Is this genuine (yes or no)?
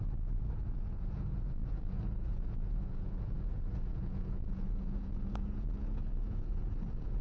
no